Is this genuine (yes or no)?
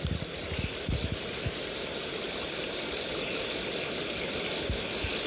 yes